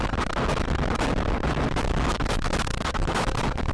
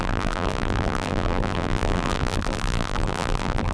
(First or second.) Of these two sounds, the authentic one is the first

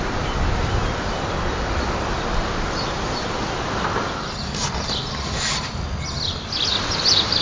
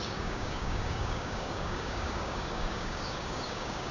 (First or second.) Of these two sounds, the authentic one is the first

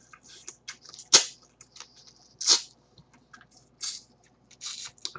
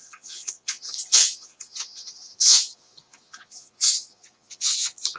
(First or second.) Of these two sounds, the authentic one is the first